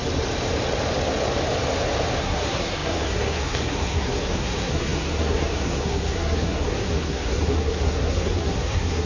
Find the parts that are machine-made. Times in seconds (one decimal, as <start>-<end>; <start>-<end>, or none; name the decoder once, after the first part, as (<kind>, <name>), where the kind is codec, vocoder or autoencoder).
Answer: 2.2-9.1 (codec, SNAC)